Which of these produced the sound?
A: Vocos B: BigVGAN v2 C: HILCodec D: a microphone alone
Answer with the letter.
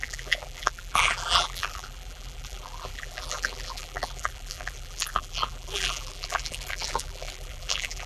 B